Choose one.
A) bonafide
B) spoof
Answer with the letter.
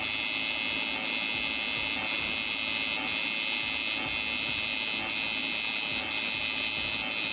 A